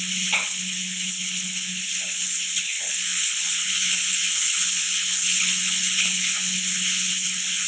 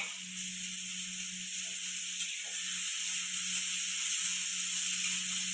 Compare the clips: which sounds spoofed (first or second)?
first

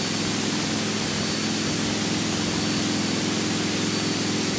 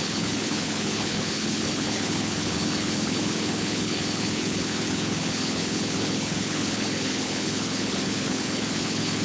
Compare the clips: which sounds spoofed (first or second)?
second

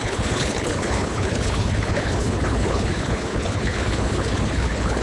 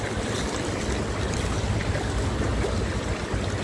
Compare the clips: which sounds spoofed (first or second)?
first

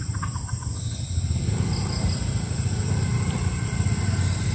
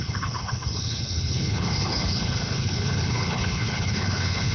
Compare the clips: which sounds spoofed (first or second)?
second